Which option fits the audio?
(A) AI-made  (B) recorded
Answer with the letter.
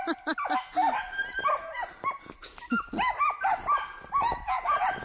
B